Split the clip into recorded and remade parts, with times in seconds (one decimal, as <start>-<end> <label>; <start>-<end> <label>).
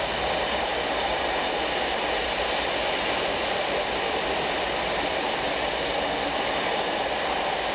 0.0-7.7 recorded